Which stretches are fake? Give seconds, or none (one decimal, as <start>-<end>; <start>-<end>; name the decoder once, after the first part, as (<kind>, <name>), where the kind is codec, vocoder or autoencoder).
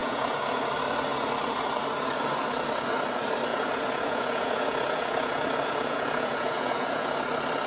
0.0-0.6 (vocoder, Vocos); 3.5-7.2